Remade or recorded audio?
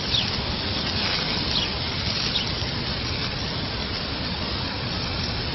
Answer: recorded